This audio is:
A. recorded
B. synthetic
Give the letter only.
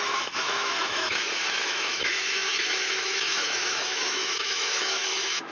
B